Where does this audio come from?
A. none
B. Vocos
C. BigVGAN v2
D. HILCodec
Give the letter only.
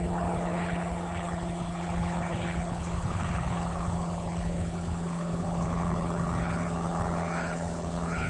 D